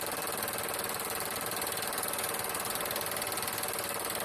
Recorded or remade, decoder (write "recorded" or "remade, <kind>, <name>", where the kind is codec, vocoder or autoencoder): recorded